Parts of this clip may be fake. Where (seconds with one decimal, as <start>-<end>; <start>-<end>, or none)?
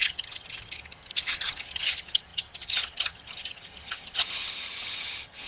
0.0-5.5